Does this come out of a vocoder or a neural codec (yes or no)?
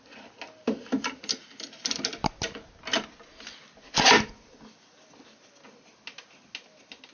no